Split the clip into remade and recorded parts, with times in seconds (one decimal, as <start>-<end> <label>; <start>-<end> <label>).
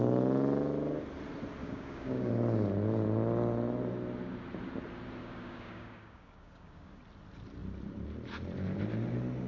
0.0-1.6 recorded; 1.6-2.3 remade; 2.3-5.2 recorded; 5.2-7.0 remade; 7.0-9.5 recorded